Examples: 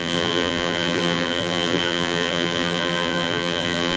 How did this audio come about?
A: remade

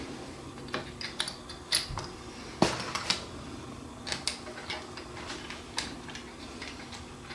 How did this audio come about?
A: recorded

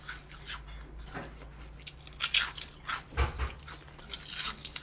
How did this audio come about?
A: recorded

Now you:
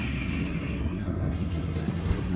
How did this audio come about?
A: remade